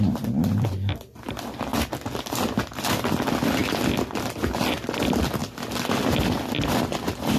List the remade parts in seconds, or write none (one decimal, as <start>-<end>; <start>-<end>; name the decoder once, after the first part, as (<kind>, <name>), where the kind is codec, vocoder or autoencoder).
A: 0.0-3.6 (vocoder, BigVGAN v2); 4.6-5.4; 6.0-7.4